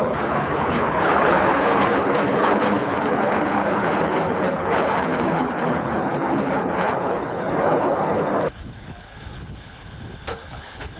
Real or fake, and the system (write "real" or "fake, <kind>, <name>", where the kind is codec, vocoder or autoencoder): fake, codec, HILCodec